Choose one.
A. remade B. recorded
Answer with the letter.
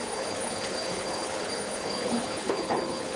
A